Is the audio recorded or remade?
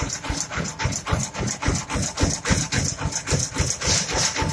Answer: recorded